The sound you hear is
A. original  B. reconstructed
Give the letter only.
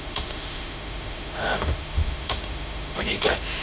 B